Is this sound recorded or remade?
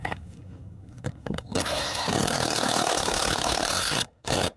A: remade